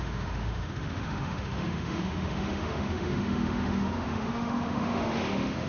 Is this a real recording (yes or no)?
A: no